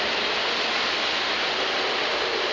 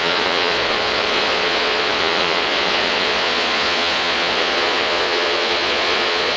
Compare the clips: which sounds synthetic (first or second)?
second